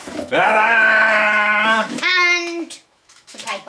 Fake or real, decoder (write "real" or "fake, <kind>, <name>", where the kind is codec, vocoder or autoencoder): fake, autoencoder, DAC-VAE